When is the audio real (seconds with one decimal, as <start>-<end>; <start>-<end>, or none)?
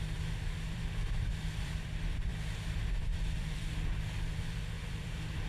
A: 2.3-3.0